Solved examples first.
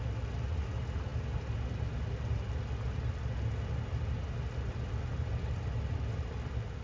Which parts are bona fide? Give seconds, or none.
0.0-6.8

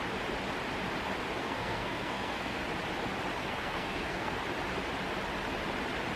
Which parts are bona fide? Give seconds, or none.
0.0-1.4; 2.6-3.4; 4.4-6.2

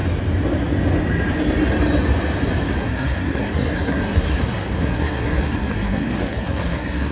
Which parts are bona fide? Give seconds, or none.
0.0-2.8

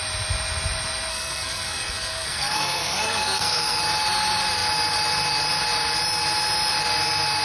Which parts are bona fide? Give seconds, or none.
0.0-1.1; 3.8-7.4

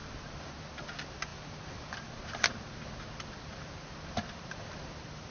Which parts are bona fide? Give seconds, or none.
0.0-5.3

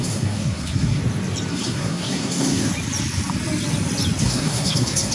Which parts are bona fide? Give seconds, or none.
1.0-1.5; 2.7-4.2

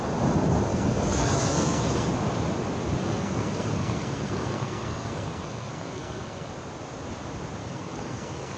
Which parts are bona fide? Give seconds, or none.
0.0-0.7; 2.1-3.0; 6.5-7.6

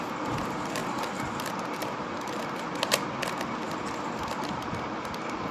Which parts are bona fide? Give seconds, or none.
0.0-5.5